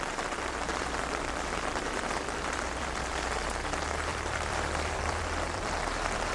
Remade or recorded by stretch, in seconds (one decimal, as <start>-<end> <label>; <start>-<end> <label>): 0.0-0.7 recorded; 0.7-3.5 remade; 3.5-4.1 recorded; 4.1-6.3 remade